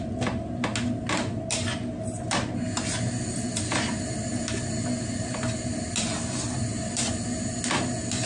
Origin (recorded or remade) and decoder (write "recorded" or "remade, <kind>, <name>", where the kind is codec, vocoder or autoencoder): recorded